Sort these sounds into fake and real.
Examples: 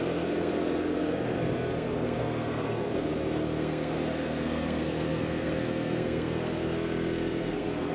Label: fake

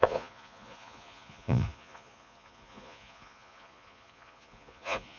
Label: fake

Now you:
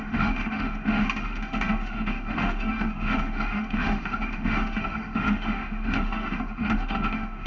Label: fake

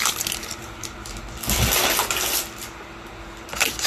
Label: real